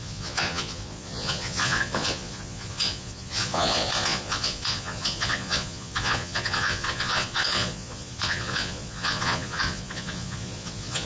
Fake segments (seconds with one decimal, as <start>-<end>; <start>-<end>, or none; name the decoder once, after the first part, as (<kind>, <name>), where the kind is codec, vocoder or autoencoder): 0.0-11.1 (vocoder, Vocos)